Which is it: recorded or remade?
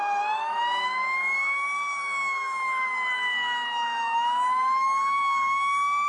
remade